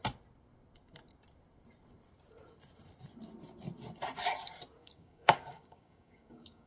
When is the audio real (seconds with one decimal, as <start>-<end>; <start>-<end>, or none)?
0.0-4.8